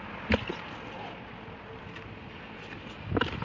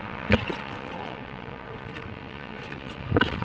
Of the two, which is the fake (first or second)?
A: second